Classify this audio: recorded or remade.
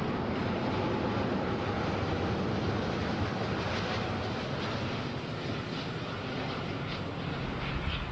recorded